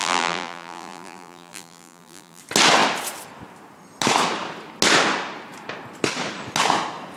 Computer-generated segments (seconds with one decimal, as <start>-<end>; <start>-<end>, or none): 0.0-2.4